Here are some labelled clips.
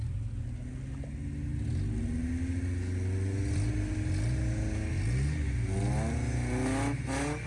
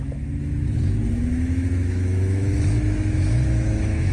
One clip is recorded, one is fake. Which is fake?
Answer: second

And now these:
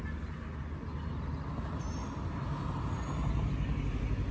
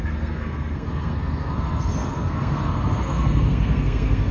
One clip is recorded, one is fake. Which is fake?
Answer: second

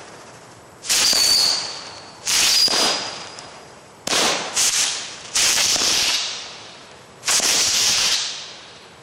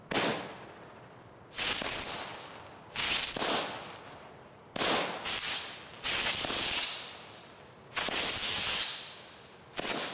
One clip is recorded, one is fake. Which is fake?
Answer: first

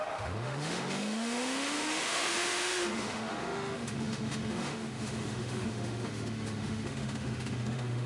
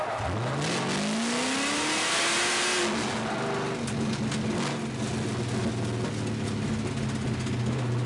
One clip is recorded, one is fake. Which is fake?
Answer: first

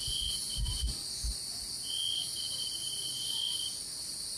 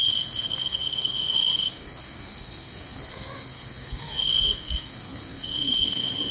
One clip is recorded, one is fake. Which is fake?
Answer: second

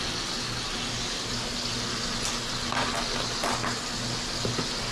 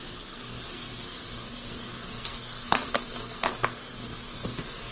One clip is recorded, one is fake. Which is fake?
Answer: second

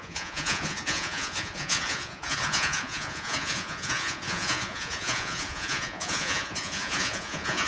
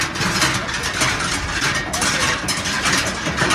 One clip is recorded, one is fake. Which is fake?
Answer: first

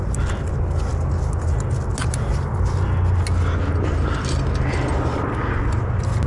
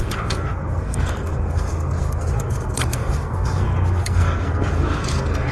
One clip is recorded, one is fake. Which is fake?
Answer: second